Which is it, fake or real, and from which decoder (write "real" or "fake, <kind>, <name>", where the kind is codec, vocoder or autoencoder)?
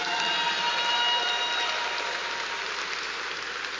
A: real